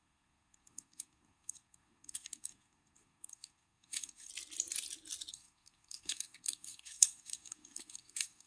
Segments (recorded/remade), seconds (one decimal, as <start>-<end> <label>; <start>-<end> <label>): 0.0-4.3 remade; 4.3-5.3 recorded; 5.3-8.5 remade